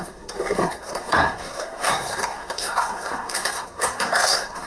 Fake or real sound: fake